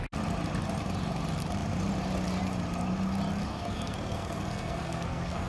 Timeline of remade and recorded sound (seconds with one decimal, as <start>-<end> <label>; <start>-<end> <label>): 0.0-3.5 recorded; 3.5-5.5 remade